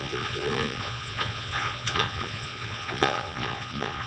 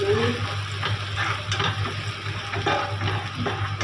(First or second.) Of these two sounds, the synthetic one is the first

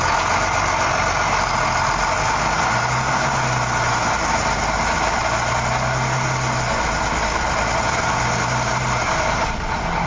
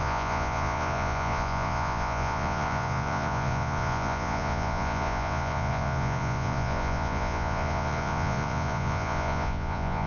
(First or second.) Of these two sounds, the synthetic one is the second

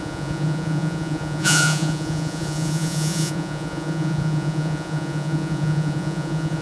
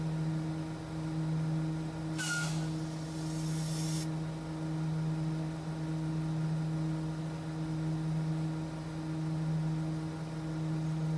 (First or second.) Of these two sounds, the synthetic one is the first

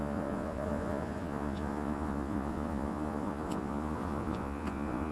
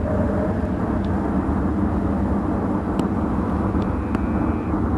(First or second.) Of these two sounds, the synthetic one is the first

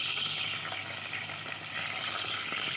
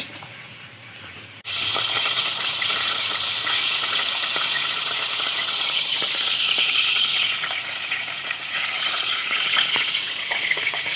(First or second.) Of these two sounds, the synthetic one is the second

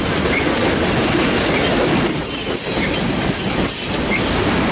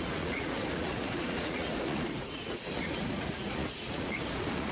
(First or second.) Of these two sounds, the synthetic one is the second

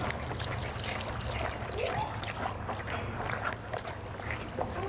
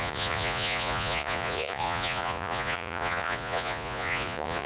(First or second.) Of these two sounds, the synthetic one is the second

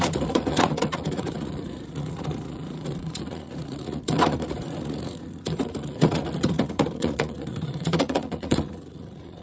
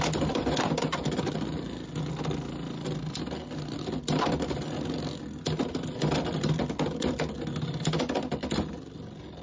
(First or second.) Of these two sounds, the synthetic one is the first